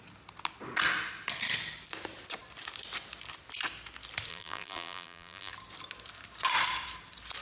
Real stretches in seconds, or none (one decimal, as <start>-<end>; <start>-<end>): 0.0-4.3; 5.5-7.4